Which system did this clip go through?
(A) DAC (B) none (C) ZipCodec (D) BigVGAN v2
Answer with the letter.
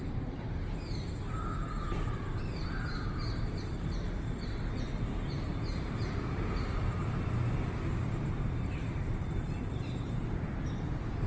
D